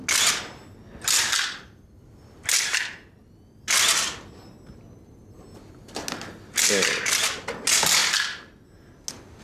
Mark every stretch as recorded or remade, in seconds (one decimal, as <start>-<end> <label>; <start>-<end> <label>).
0.0-9.4 recorded